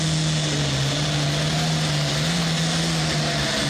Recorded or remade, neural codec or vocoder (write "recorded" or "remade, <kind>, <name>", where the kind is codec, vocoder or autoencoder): recorded